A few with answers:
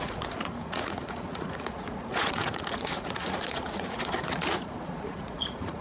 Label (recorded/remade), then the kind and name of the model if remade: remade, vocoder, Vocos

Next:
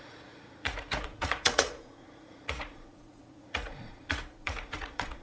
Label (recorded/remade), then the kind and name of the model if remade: remade, vocoder, Vocos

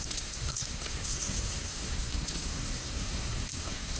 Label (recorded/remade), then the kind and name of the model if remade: remade, codec, SNAC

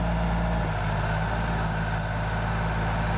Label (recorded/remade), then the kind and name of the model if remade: recorded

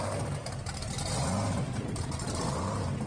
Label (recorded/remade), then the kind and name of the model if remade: recorded